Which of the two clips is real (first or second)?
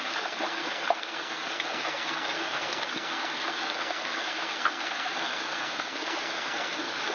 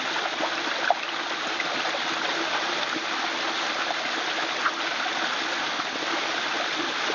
second